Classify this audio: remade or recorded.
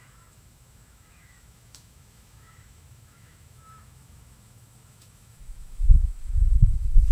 remade